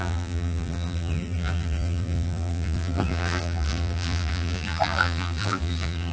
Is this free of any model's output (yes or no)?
no